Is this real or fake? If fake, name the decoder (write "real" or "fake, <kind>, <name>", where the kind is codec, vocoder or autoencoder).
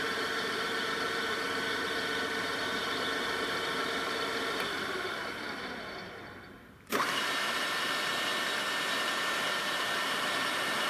fake, vocoder, BigVGAN v2